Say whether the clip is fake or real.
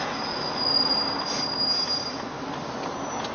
real